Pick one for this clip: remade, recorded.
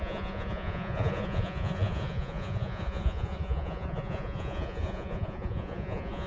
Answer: remade